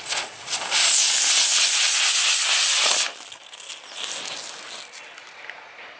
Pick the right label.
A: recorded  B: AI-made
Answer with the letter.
A